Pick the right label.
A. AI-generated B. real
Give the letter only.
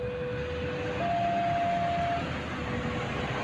B